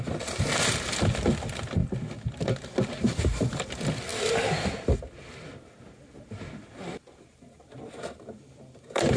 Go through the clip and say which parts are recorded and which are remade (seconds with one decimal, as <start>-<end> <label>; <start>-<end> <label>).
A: 0.0-9.2 recorded